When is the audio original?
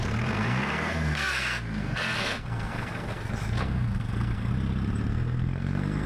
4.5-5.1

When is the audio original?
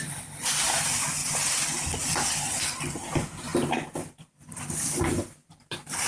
0.0-6.1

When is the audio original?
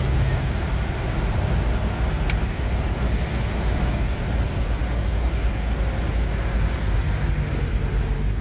0.0-8.4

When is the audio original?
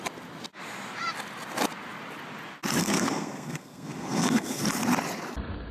0.0-2.8; 4.6-5.7